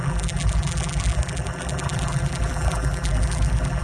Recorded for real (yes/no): no